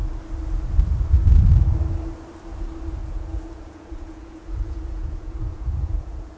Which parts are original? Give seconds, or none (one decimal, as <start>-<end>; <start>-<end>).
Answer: 0.0-3.0